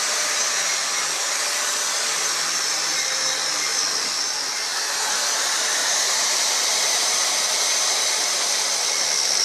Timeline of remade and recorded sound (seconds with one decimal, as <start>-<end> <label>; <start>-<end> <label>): 0.0-5.8 recorded; 5.8-7.6 remade; 7.6-9.4 recorded